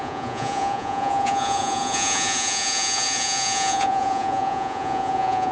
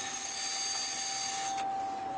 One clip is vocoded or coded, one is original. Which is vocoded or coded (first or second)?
first